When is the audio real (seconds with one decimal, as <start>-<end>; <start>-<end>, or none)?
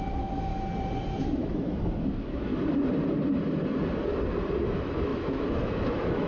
0.5-1.2; 2.5-4.6